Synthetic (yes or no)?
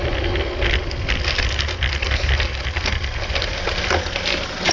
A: no